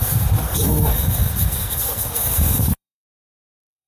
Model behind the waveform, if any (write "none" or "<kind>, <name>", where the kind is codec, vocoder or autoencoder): codec, SNAC